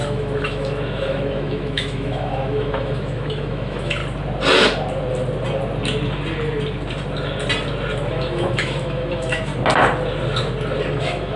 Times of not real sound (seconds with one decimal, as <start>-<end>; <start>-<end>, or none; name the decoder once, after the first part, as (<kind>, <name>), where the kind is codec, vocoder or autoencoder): 0.0-4.0 (autoencoder, DAC-VAE); 8.1-9.5; 10.9-11.4